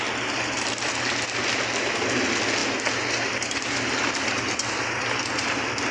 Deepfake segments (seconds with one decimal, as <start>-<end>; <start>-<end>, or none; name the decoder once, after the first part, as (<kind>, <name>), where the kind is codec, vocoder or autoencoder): none